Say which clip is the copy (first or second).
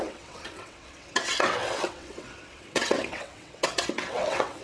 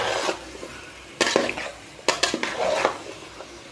first